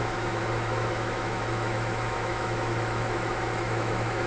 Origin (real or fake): fake